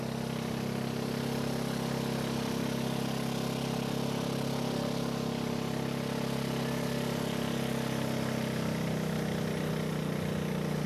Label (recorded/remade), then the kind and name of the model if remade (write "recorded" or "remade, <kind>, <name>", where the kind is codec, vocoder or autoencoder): recorded